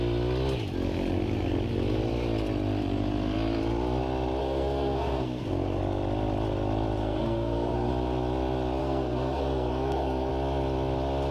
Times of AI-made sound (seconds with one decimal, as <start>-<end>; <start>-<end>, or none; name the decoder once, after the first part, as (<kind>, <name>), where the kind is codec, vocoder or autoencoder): 4.4-5.8 (codec, SNAC); 7.0-7.9; 8.8-10.3